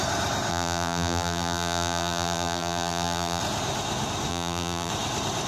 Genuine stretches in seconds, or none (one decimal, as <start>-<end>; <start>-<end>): 0.0-0.5; 3.4-4.3; 4.9-5.5